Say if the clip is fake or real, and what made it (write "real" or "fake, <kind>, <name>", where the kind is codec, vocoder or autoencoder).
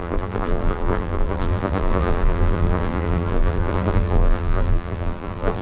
fake, vocoder, BigVGAN v2